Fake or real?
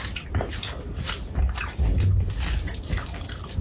real